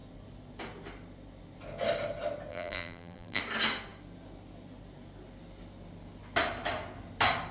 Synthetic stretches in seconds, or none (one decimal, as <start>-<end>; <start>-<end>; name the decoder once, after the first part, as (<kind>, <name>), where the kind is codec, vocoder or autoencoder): 2.5-3.4 (vocoder, BigVGAN v2)